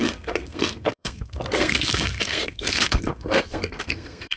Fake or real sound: fake